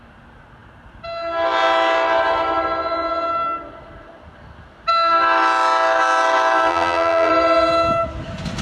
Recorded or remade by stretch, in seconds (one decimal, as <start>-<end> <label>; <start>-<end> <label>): 0.0-6.7 recorded; 6.7-7.3 remade; 7.3-8.6 recorded